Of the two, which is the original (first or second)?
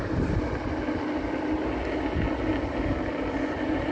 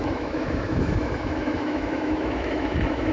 first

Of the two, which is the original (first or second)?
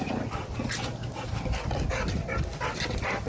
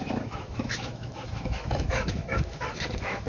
first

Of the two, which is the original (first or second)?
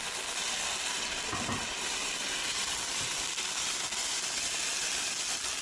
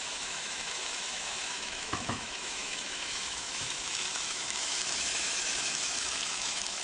first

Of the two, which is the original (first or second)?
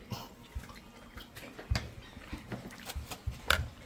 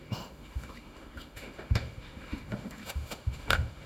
first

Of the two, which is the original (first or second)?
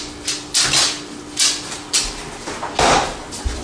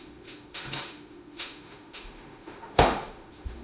first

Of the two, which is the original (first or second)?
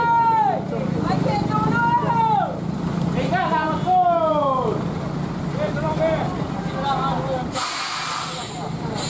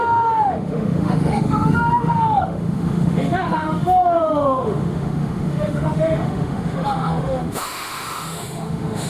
first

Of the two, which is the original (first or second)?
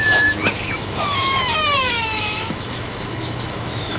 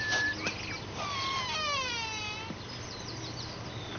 second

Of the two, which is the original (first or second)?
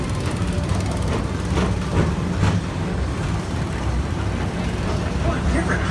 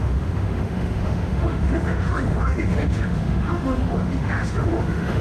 first